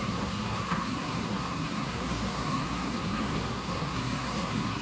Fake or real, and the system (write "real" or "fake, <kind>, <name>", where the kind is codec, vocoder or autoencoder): fake, codec, SNAC